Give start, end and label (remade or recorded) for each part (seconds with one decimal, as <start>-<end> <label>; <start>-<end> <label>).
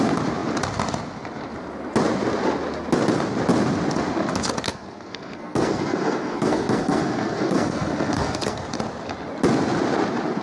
0.0-4.7 recorded; 4.7-8.6 remade; 8.6-10.4 recorded